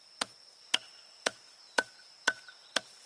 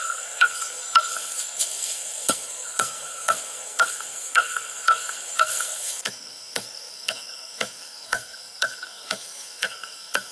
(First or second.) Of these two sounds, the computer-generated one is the second